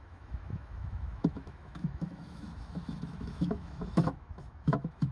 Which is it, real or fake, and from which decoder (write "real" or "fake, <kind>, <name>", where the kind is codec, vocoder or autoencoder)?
fake, autoencoder, DAC-VAE